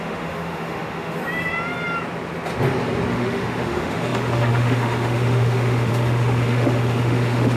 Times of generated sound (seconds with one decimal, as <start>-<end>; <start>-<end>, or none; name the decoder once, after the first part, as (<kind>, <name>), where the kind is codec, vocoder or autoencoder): 0.0-1.2 (autoencoder, DAC-VAE); 3.1-7.6